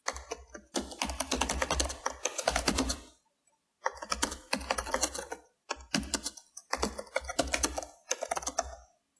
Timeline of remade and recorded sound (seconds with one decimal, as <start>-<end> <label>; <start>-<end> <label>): 0.0-2.3 recorded; 2.3-3.0 remade; 3.0-9.2 recorded

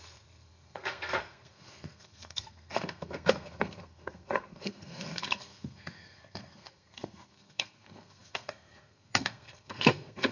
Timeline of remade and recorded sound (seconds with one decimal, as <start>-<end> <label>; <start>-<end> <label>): 0.0-10.3 remade

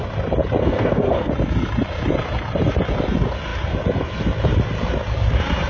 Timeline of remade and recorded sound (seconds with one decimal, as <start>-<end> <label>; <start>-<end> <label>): 0.0-0.6 recorded; 0.6-1.3 remade; 1.3-5.7 recorded

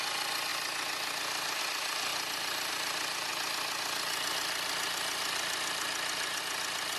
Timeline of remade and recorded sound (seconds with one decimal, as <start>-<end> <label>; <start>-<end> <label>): 0.0-2.1 recorded; 2.1-2.7 remade; 2.7-7.0 recorded

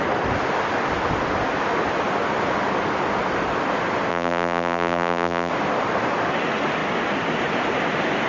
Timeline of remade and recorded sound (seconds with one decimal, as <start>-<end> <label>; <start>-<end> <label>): 0.0-4.1 recorded; 4.1-5.5 remade; 5.5-8.3 recorded